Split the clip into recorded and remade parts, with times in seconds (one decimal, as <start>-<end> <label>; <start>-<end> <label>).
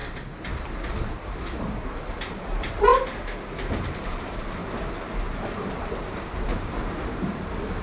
0.0-2.9 remade; 2.9-3.7 recorded; 3.7-7.8 remade